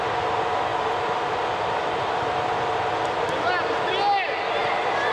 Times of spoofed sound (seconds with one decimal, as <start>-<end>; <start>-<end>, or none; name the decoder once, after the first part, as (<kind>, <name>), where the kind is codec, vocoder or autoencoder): none